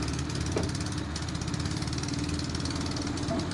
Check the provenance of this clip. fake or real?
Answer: real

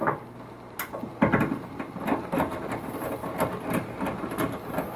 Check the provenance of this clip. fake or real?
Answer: real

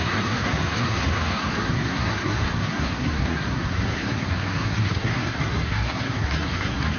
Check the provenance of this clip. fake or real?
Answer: fake